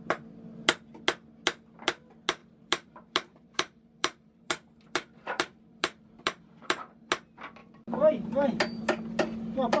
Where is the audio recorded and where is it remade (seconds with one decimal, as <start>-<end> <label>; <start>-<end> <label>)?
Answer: 0.0-2.4 recorded; 2.4-7.1 remade; 7.1-7.6 recorded; 7.6-8.8 remade; 8.8-9.8 recorded